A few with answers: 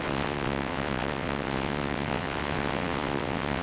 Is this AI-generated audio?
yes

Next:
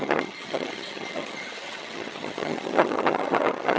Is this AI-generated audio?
yes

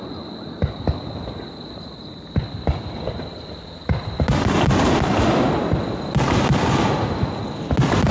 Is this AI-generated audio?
no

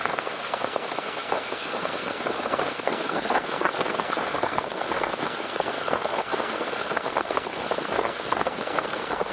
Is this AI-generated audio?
yes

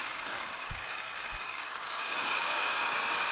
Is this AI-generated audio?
yes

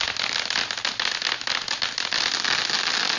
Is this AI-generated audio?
no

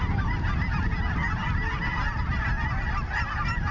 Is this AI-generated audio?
no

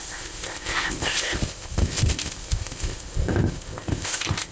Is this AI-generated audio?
yes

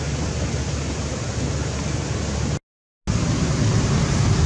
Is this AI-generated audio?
no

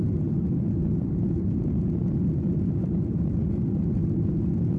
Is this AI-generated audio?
no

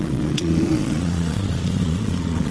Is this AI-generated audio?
yes